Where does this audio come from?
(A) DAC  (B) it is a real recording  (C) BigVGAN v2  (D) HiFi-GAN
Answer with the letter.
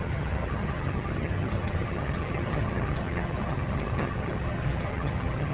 D